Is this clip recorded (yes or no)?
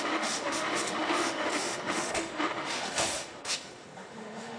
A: no